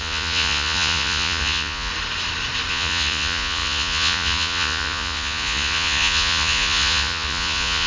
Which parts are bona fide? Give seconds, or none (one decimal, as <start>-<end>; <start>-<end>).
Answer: 1.9-2.7